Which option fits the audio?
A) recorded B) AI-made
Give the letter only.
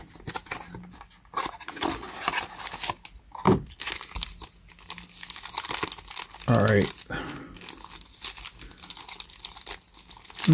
A